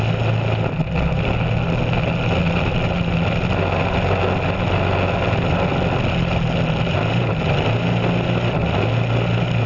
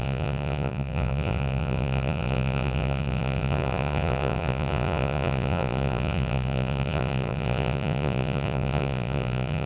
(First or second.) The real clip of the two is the first